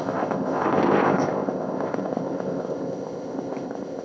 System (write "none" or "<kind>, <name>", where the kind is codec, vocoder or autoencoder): codec, ZipCodec